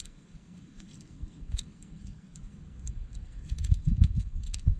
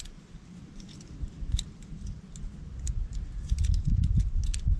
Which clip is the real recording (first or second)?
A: second